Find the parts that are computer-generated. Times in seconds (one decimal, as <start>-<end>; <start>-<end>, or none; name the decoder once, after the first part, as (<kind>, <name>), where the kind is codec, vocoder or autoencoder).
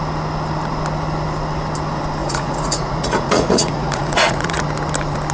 2.2-4.6 (vocoder, Vocos)